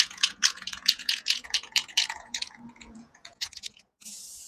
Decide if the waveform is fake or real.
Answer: fake